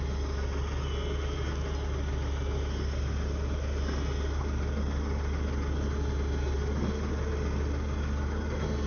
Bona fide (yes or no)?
yes